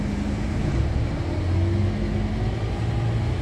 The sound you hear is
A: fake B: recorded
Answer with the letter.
B